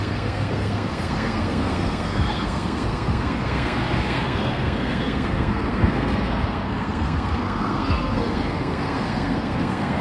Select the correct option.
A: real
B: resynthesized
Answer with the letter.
B